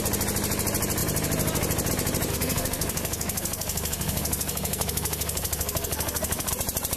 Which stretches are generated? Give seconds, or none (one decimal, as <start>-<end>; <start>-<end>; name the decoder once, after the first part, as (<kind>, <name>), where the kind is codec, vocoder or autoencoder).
2.3-6.5 (codec, SNAC)